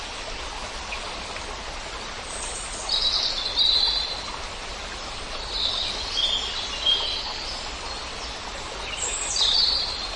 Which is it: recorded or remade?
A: recorded